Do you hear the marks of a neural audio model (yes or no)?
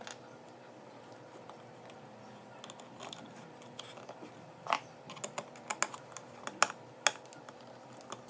no